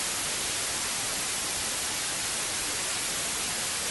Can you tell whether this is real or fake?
real